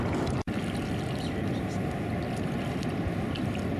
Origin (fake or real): real